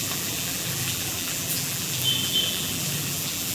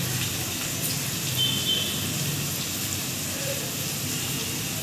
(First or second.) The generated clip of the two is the first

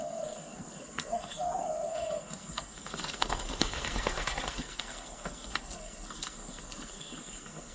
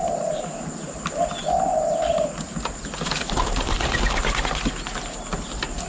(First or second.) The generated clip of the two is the first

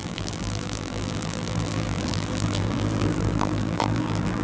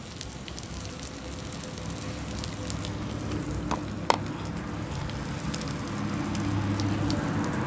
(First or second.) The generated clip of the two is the first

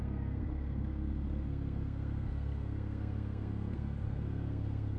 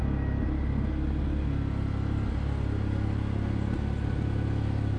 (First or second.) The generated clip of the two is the first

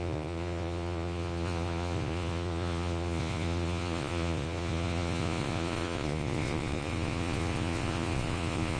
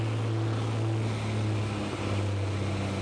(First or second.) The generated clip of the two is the first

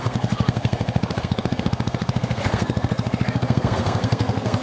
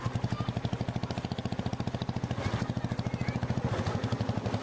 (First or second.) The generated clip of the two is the first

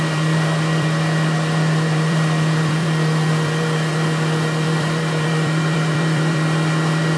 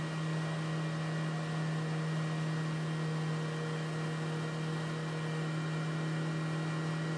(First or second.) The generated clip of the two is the first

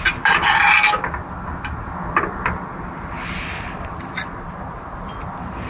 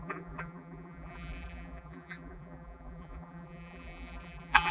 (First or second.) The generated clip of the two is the second